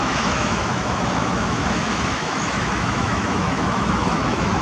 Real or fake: fake